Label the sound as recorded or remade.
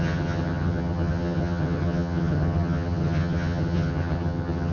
remade